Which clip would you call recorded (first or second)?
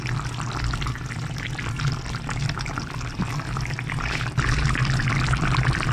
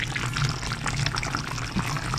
second